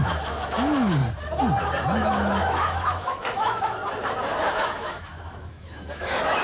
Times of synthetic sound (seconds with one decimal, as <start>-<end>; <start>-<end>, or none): 0.0-1.0; 1.6-3.8; 4.5-6.4